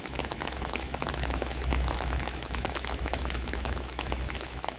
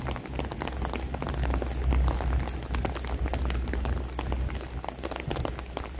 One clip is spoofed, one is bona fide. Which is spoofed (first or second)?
first